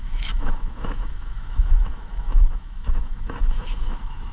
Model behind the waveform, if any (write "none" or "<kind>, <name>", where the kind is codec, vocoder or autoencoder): autoencoder, DAC-VAE